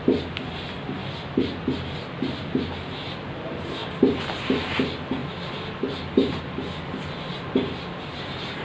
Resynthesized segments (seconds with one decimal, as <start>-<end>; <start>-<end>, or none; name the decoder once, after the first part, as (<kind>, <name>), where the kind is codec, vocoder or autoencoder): 1.0-1.6 (vocoder, BigVGAN v2); 5.2-6.4

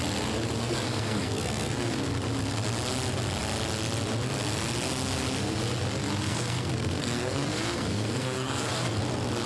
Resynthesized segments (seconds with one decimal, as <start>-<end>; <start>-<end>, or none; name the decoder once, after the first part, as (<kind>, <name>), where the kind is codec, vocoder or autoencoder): 0.6-2.1 (codec, SNAC); 6.2-9.0

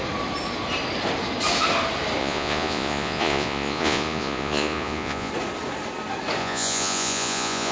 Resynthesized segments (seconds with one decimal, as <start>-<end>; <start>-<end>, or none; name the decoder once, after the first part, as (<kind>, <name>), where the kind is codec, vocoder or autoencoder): 2.2-5.3 (vocoder, Vocos); 6.4-7.7

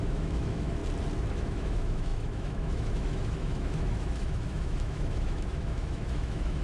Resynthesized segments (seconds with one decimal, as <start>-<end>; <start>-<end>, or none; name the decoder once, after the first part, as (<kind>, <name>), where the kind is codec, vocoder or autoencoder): 0.0-0.8 (autoencoder, DAC-VAE); 1.3-6.6

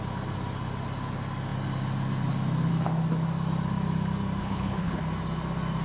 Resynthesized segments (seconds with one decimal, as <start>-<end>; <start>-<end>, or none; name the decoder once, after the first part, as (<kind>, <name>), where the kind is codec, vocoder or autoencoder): 4.4-5.0 (codec, HILCodec)

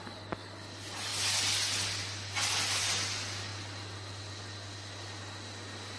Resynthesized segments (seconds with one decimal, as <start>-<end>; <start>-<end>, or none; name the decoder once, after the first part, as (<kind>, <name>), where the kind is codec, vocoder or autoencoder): none

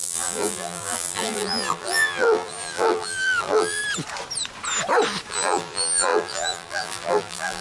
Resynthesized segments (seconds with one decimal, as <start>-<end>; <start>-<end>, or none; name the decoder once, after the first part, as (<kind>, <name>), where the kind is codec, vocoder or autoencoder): 0.0-3.8 (vocoder, BigVGAN v2); 5.3-7.6

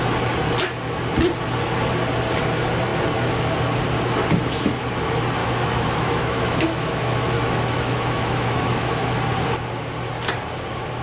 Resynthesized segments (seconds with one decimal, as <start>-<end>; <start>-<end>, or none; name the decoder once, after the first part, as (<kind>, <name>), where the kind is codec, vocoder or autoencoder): 5.4-9.1 (autoencoder, DAC-VAE)